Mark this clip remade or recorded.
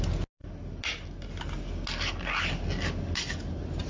recorded